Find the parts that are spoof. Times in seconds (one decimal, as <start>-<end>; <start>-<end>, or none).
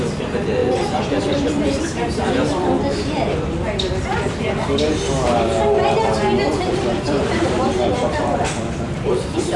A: 0.0-0.6; 1.2-9.6